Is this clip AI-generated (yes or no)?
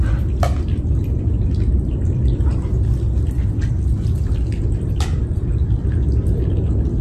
no